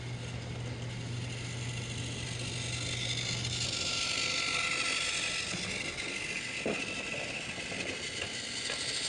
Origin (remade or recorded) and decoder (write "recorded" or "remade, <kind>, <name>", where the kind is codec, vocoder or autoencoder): recorded